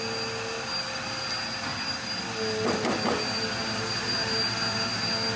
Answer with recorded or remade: recorded